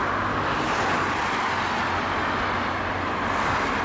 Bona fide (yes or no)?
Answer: yes